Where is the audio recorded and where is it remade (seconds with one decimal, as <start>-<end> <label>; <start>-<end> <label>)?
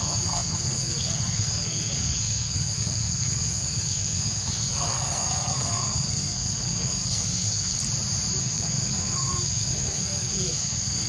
0.0-7.8 remade; 7.8-8.4 recorded; 8.4-11.1 remade